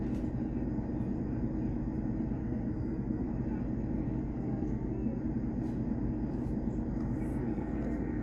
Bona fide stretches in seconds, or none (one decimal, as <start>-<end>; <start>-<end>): 0.0-2.4; 3.3-4.0; 5.2-7.3